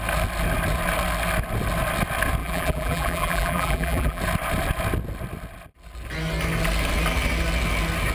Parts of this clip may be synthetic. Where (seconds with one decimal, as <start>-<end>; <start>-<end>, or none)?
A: 2.4-4.2